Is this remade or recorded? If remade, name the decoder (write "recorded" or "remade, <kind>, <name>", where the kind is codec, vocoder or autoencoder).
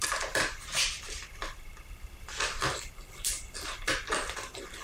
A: remade, vocoder, BigVGAN v2